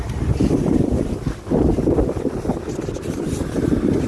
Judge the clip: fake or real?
real